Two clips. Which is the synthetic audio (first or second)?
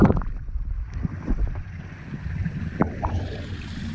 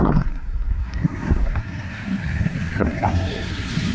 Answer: second